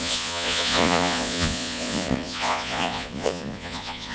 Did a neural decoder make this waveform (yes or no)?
yes